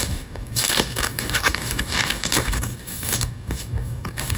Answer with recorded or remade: remade